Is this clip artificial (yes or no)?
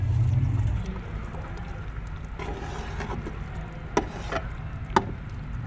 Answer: no